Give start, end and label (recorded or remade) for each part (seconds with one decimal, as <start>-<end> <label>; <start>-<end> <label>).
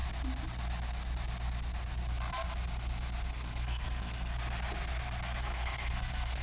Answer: 0.0-3.3 recorded; 3.3-4.3 remade; 4.3-5.4 recorded; 5.4-6.4 remade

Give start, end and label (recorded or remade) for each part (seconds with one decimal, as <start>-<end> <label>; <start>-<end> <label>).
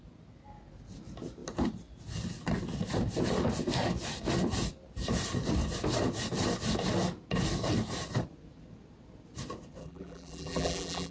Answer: 0.0-9.8 recorded; 9.8-11.1 remade